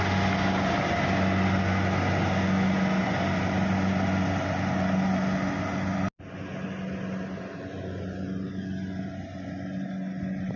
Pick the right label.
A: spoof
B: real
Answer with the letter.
B